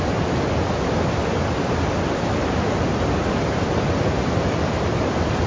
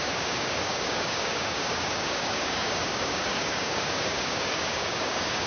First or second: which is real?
first